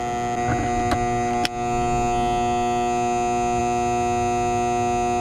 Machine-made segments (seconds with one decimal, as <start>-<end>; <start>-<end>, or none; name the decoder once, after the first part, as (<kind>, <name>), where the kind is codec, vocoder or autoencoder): none